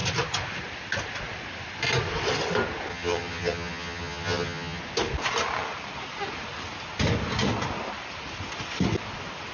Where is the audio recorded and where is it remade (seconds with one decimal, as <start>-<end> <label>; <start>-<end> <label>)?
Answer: 0.0-2.9 recorded; 2.9-4.8 remade; 4.8-9.5 recorded